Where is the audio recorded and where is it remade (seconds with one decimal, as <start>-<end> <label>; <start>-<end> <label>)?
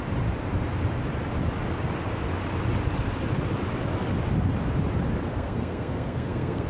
0.0-5.3 recorded; 5.3-6.7 remade